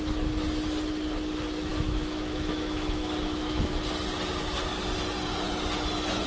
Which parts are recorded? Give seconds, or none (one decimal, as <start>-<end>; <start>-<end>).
0.0-1.7; 3.7-6.3